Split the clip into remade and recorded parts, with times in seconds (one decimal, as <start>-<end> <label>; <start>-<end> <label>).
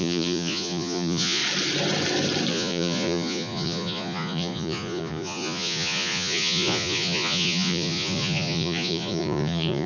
0.0-1.4 remade; 1.4-2.5 recorded; 2.5-9.9 remade